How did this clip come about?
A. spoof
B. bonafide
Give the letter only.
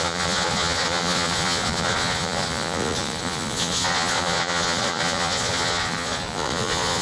A